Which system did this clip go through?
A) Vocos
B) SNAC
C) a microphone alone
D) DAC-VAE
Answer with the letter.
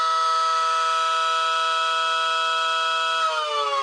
D